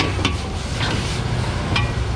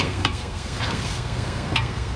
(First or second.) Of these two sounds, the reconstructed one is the second